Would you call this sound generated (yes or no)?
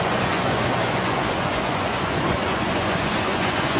yes